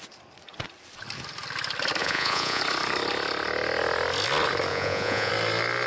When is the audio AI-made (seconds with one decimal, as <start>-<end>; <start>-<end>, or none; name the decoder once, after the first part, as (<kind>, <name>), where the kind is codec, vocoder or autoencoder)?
2.0-2.6 (vocoder, Vocos); 4.7-5.3